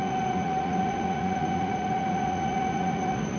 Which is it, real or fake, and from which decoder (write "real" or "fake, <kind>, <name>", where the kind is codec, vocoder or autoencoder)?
fake, vocoder, Vocos